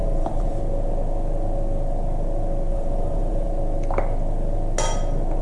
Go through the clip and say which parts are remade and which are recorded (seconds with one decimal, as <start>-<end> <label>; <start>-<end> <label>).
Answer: 0.0-0.6 remade; 0.6-2.7 recorded; 2.7-3.5 remade; 3.5-5.4 recorded